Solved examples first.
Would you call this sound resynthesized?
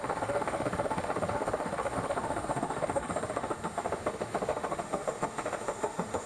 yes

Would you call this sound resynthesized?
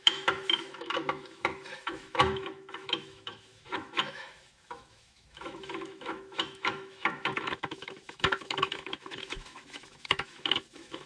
yes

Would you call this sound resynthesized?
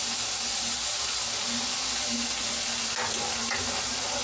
no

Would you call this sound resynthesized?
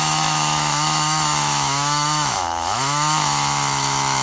yes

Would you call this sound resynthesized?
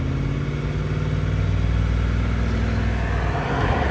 no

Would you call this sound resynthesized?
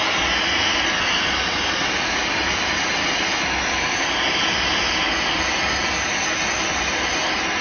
no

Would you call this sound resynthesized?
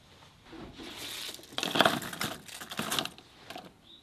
no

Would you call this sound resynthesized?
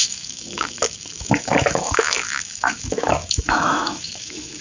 yes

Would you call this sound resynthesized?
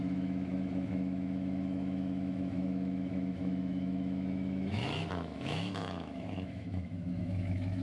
yes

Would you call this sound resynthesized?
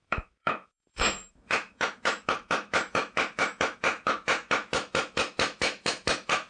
yes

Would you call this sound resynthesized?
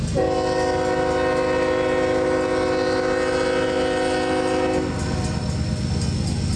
no